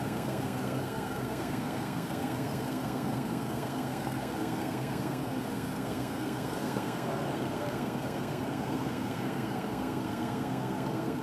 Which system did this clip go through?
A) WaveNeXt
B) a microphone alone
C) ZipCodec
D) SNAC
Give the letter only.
D